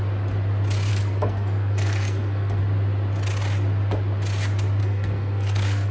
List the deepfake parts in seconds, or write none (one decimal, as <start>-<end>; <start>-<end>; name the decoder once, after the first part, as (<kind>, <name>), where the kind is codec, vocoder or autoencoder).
0.9-2.6 (codec, SNAC); 4.8-5.9